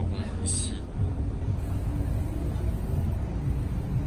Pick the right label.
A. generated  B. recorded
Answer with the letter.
B